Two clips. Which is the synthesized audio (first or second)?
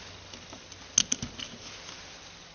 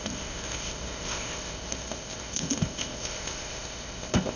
second